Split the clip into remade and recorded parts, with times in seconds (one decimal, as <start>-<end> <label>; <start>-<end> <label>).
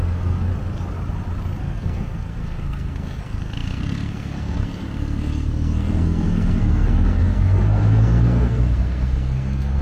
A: 0.0-0.5 remade; 0.5-1.6 recorded; 1.6-9.8 remade